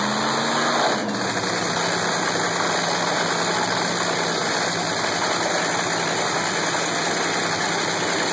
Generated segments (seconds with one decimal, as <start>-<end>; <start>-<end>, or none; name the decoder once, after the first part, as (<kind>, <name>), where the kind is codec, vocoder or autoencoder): none